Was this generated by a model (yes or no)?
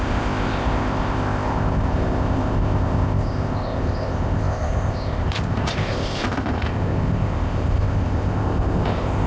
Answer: yes